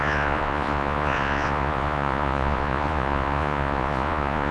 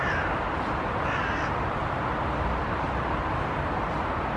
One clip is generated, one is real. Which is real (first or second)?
second